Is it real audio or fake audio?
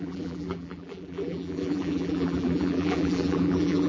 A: fake